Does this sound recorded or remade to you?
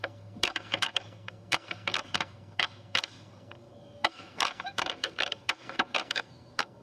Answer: remade